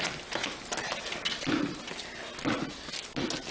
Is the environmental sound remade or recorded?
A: recorded